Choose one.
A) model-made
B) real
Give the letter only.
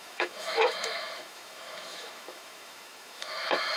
A